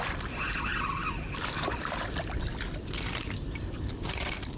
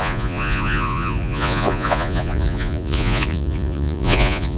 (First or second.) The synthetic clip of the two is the second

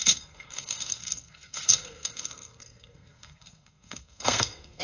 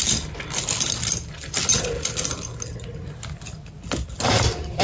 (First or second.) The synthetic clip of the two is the first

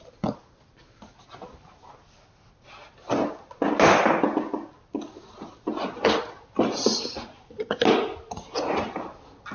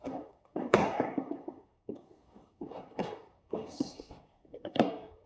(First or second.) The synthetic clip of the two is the second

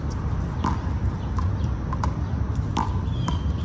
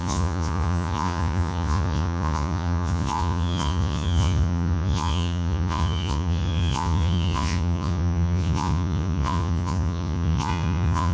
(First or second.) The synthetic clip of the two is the second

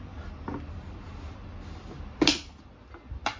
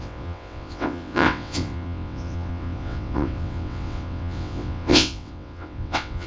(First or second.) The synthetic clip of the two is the second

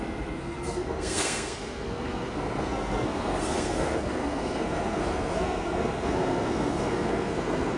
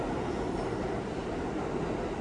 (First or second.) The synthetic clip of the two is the first